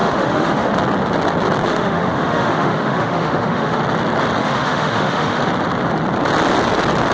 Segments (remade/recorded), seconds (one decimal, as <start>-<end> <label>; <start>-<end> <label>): 0.0-0.7 remade; 0.7-1.7 recorded; 1.7-3.8 remade; 3.8-4.4 recorded; 4.4-5.4 remade; 5.4-7.1 recorded